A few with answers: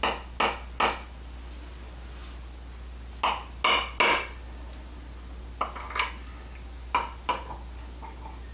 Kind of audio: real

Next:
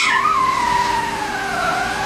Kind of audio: real